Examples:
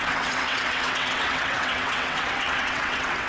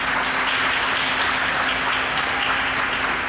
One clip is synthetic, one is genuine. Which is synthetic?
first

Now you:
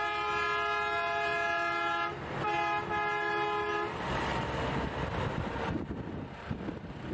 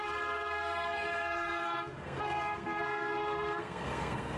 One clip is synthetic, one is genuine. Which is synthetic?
second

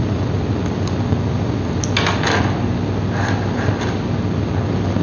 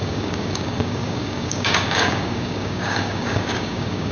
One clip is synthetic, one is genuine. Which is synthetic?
second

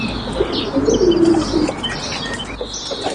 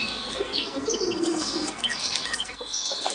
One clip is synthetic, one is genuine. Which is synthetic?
second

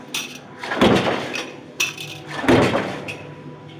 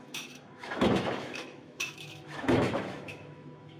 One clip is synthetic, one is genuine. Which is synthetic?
second